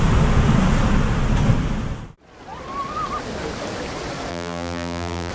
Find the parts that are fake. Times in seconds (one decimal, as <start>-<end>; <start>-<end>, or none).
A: 4.3-5.3